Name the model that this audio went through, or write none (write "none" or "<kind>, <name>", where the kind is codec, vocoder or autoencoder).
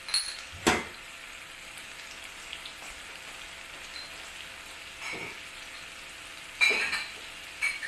none